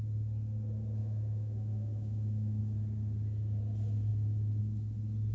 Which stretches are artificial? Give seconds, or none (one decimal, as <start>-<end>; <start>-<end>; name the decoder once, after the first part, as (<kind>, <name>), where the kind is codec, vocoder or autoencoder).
1.0-2.6 (autoencoder, DAC-VAE)